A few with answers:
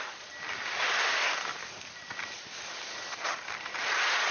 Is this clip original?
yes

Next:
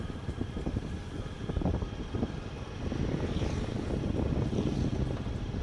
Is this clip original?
yes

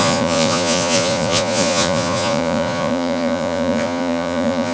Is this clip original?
no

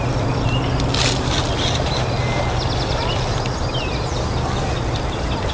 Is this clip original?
yes